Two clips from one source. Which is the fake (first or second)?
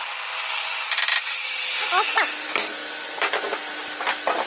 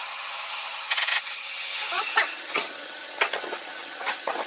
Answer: second